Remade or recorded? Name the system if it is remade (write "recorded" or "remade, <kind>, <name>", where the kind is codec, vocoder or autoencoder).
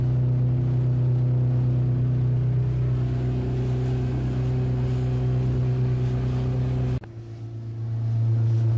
recorded